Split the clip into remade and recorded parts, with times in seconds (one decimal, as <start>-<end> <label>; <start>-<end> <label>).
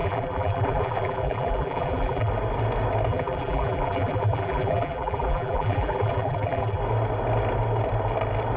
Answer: 0.0-2.3 remade; 2.3-3.1 recorded; 3.1-6.8 remade; 6.8-8.6 recorded